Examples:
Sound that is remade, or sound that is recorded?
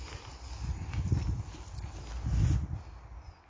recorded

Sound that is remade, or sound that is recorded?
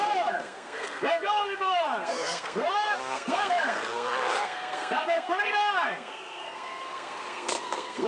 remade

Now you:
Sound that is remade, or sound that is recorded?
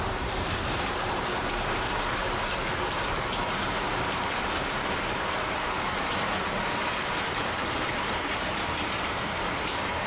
remade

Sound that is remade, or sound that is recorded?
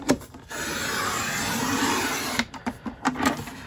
remade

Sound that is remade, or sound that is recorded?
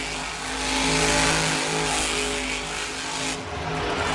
recorded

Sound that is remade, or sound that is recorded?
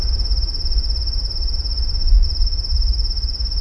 recorded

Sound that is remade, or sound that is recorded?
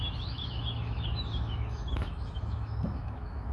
remade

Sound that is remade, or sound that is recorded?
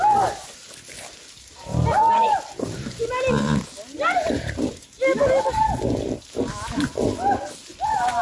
recorded